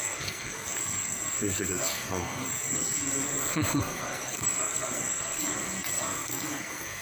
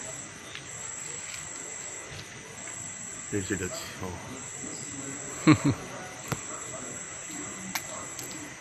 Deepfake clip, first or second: first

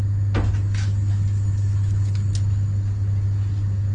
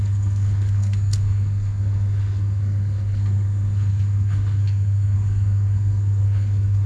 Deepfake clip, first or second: second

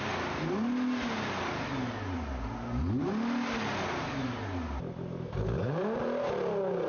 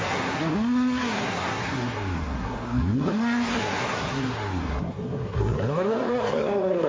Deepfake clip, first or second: second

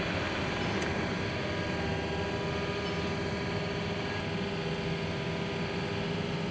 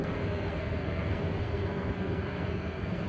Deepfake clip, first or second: second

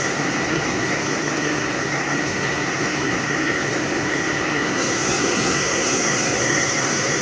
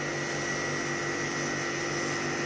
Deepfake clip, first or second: first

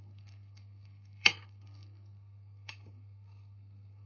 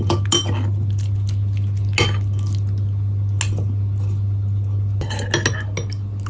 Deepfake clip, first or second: first